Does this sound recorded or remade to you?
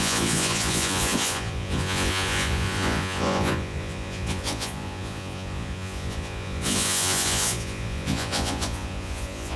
remade